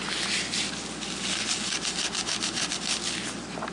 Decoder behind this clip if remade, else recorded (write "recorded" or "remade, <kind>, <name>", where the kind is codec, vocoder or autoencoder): recorded